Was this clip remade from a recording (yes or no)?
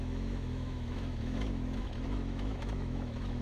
yes